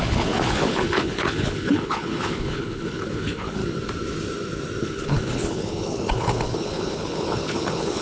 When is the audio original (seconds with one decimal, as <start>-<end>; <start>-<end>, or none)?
3.6-4.8